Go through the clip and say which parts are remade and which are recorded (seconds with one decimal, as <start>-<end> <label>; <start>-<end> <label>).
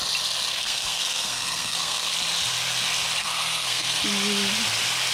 0.0-0.5 recorded; 0.5-2.1 remade; 2.1-3.2 recorded; 3.2-4.0 remade; 4.0-5.1 recorded